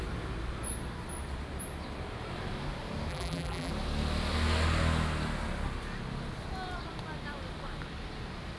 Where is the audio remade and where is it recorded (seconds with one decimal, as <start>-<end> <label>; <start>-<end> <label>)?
0.0-3.1 recorded; 3.1-3.7 remade; 3.7-8.6 recorded

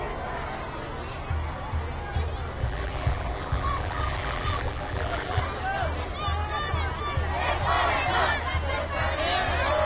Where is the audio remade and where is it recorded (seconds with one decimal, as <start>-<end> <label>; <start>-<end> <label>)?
0.0-2.6 recorded; 2.6-5.4 remade; 5.4-9.9 recorded

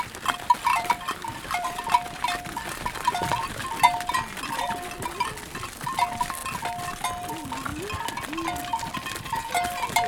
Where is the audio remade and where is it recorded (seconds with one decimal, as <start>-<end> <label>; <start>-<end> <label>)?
0.0-0.7 recorded; 0.7-3.5 remade; 3.5-10.1 recorded

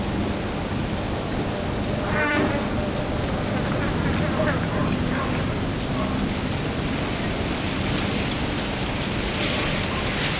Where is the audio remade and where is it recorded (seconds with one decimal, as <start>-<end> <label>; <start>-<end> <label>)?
0.0-10.4 recorded

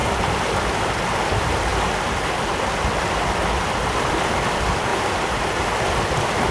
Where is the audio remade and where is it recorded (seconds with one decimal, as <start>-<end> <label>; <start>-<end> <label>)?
0.0-0.9 remade; 0.9-4.9 recorded; 4.9-5.7 remade; 5.7-6.5 recorded

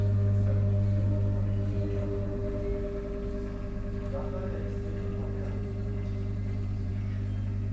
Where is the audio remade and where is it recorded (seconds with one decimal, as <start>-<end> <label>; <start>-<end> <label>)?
0.0-5.2 recorded; 5.2-6.9 remade; 6.9-7.7 recorded

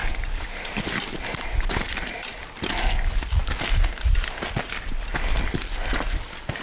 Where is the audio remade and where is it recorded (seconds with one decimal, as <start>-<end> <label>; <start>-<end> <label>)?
0.0-2.7 remade; 2.7-6.6 recorded